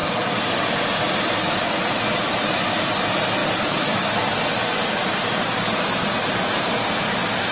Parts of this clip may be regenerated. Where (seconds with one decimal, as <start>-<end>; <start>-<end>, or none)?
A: 0.0-0.9; 3.4-7.0